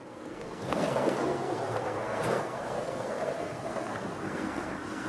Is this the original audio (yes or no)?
no